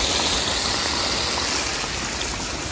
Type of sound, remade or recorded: recorded